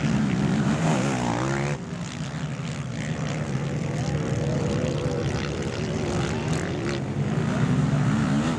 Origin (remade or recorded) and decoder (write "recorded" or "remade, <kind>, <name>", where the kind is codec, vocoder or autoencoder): recorded